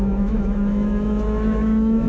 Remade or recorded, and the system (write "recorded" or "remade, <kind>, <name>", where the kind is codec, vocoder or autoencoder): remade, autoencoder, DAC-VAE